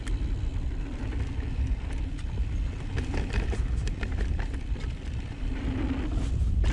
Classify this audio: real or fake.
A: real